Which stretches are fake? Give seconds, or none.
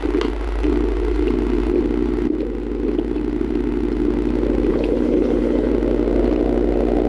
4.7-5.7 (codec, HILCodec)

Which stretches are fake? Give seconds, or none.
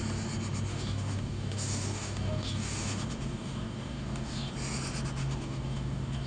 0.7-4.5 (codec, DAC); 5.2-6.3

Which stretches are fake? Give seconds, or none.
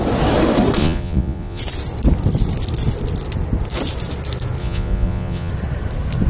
0.8-1.6 (vocoder, Vocos); 4.6-5.5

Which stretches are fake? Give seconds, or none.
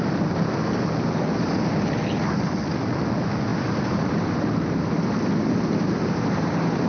3.5-6.9 (vocoder, BigVGAN v2)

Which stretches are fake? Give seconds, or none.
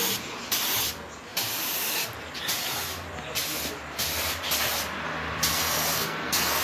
5.5-6.6 (codec, SNAC)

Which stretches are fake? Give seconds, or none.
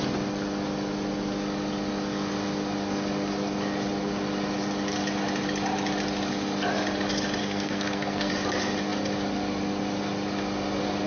7.4-8.3 (codec, SNAC)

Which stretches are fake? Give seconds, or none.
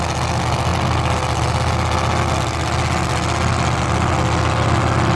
none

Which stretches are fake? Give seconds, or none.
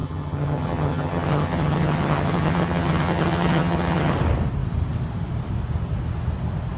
0.0-4.1 (vocoder, HiFi-GAN)